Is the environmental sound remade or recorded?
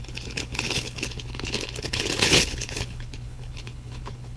remade